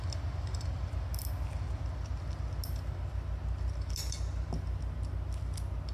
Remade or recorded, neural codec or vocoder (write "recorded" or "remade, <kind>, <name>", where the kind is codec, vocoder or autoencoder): recorded